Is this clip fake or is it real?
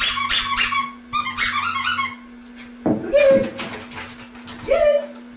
real